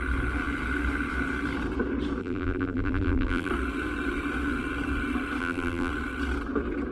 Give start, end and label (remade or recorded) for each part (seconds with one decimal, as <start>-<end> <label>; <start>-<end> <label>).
0.0-2.2 recorded; 2.2-3.5 remade; 3.5-5.4 recorded; 5.4-5.9 remade; 5.9-6.9 recorded